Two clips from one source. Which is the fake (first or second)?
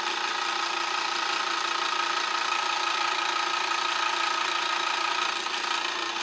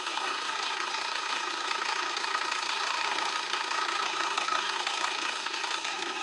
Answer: second